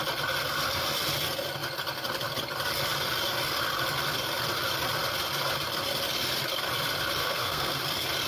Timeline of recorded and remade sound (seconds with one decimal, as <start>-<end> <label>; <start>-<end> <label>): 0.0-7.2 recorded; 7.2-7.8 remade; 7.8-8.3 recorded